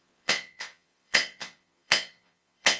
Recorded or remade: remade